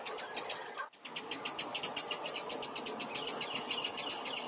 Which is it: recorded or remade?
recorded